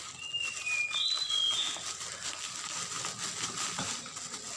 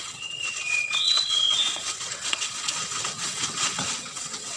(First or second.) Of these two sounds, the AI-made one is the second